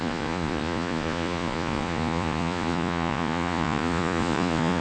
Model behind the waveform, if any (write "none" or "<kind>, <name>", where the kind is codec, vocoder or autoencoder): vocoder, Vocos